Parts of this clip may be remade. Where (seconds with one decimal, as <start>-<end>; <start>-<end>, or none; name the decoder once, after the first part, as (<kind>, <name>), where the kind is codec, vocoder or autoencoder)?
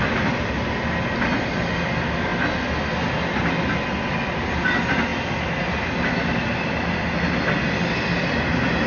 none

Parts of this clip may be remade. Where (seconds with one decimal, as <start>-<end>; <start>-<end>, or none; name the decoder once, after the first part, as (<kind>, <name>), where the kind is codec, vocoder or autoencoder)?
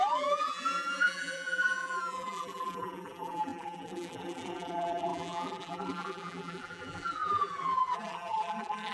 0.0-8.9 (vocoder, BigVGAN v2)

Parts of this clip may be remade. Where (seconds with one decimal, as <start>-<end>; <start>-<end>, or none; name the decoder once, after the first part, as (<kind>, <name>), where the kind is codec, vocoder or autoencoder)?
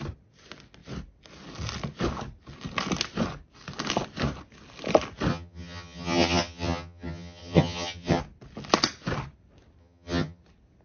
5.3-8.2 (vocoder, HiFi-GAN); 9.8-10.4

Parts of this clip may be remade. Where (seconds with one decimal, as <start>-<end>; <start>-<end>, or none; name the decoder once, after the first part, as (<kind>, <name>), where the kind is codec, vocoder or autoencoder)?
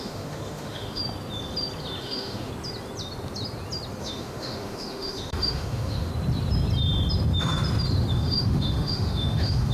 0.0-1.0 (autoencoder, DAC-VAE); 2.0-2.5; 4.0-6.1; 8.1-9.7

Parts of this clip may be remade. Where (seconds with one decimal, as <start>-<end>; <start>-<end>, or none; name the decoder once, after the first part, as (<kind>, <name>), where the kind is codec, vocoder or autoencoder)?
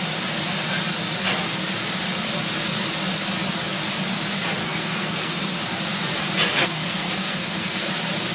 4.6-5.4 (codec, SNAC); 6.6-7.9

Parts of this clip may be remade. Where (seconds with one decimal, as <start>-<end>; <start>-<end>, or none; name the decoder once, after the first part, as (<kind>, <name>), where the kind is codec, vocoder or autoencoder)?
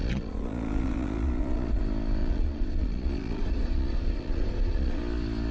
0.0-1.8 (vocoder, Vocos); 2.2-5.0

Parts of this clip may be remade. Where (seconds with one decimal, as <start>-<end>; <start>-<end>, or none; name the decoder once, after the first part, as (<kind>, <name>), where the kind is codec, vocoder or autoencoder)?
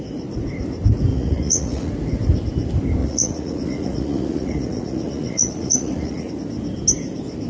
1.1-1.9 (vocoder, Vocos); 3.0-6.3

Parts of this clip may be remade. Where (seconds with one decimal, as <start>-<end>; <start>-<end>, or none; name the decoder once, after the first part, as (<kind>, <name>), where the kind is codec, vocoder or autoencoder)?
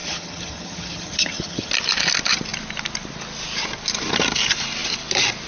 0.0-1.7 (vocoder, HiFi-GAN)